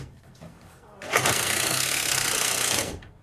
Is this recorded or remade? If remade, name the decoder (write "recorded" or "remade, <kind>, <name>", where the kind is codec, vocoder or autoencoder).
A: remade, codec, SNAC